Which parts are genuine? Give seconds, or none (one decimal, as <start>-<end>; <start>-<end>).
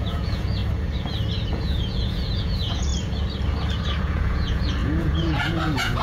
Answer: 0.6-1.5; 2.9-4.0